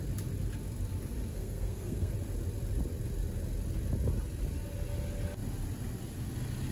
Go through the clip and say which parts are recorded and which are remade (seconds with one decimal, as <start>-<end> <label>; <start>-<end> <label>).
0.0-1.3 recorded; 1.3-2.1 remade; 2.1-6.7 recorded